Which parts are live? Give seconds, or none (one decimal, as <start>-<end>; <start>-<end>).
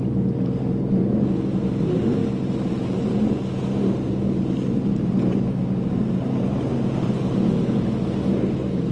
0.0-8.9